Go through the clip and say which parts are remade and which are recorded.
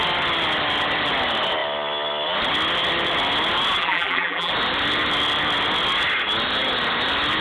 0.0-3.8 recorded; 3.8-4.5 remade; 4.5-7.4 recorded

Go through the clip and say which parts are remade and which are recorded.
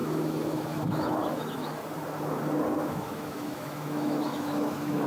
0.0-1.8 remade; 1.8-2.8 recorded; 2.8-5.1 remade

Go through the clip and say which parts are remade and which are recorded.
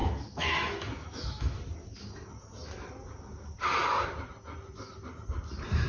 0.0-1.6 remade; 1.6-5.9 recorded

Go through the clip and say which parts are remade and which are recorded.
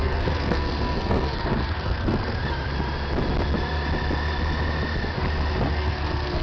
0.0-2.4 remade; 2.4-5.7 recorded; 5.7-6.4 remade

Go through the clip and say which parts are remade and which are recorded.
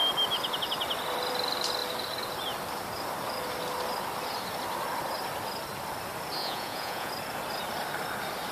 0.0-6.4 recorded; 6.4-7.1 remade; 7.1-8.5 recorded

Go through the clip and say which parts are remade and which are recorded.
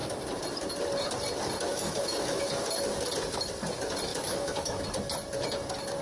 0.0-1.7 recorded; 1.7-2.5 remade; 2.5-4.1 recorded; 4.1-4.8 remade; 4.8-6.0 recorded